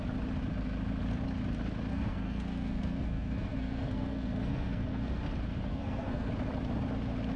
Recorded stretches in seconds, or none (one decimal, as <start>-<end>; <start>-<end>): 0.0-1.9; 5.2-5.7; 6.3-7.4